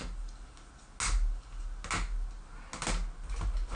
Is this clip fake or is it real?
real